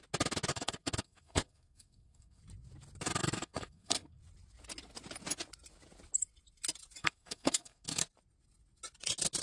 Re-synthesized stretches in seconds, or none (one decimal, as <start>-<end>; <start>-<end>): 0.5-2.4; 3.2-4.2; 7.0-8.1

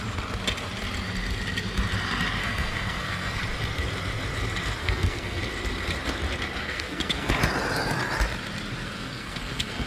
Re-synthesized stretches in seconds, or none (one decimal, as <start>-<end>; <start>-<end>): 2.4-3.4; 4.8-5.4; 6.6-7.3; 8.8-9.9

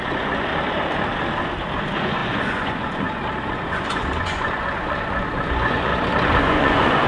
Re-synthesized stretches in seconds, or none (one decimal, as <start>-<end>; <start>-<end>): 0.0-0.5; 1.8-5.9; 6.4-7.1

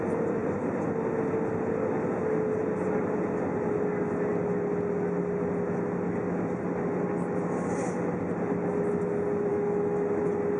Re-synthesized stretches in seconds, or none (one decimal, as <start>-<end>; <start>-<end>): 9.5-10.2

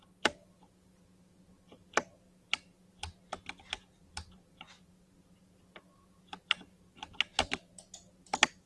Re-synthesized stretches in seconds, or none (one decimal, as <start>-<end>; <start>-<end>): none